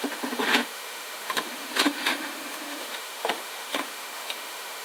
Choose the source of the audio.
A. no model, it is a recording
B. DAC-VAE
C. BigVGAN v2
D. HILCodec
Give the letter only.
B